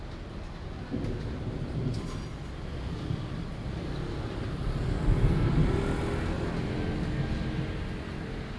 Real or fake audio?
real